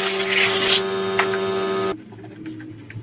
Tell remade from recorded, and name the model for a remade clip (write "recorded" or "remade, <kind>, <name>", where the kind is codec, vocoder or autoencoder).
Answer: recorded